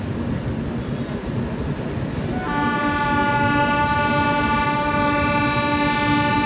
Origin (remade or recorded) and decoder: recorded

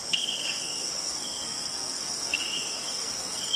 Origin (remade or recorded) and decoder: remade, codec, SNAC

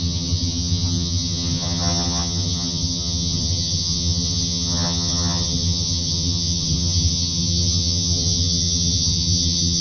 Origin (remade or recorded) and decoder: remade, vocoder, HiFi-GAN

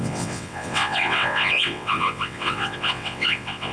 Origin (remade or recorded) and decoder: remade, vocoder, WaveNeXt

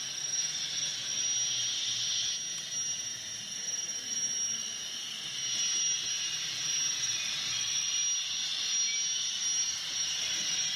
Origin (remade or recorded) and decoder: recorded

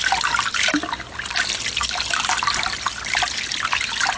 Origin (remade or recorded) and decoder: recorded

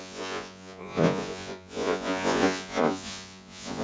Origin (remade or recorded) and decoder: remade, vocoder, Vocos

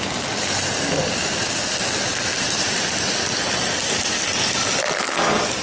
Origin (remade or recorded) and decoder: recorded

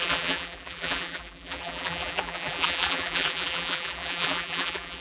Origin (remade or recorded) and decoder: remade, vocoder, BigVGAN v2